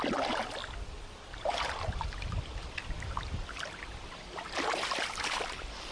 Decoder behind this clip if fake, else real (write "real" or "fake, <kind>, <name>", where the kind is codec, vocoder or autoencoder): fake, vocoder, BigVGAN v2